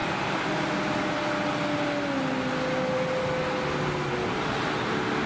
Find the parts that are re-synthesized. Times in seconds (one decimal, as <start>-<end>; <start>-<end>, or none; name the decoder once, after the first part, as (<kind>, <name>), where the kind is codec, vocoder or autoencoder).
none

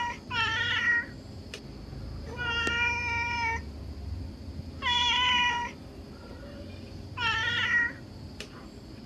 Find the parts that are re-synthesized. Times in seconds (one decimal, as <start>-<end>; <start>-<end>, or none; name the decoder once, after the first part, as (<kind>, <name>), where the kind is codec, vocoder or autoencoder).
0.0-1.9 (vocoder, BigVGAN v2); 4.7-9.1

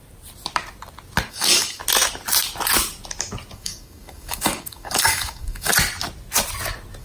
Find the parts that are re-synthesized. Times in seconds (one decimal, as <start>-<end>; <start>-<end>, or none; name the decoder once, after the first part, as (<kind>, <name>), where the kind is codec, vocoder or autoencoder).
1.3-1.8 (codec, DAC); 3.5-5.7

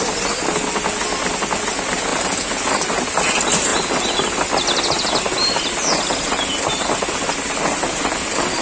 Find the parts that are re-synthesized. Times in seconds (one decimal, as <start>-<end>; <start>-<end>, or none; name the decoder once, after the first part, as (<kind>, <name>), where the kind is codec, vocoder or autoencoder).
none

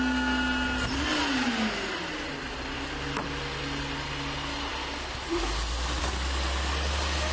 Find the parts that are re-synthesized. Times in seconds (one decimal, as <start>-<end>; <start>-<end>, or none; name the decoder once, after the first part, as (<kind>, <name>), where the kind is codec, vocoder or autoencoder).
none

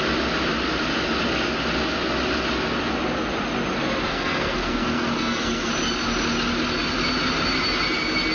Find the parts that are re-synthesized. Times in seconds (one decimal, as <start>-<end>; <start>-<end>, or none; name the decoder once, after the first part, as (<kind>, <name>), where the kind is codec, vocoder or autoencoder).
4.1-5.7 (codec, SNAC)

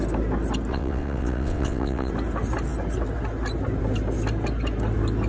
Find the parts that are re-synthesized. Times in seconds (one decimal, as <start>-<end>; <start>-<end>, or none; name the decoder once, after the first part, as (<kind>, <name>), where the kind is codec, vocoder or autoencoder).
0.7-2.1 (vocoder, WaveNeXt)